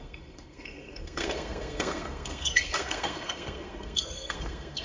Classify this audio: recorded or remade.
remade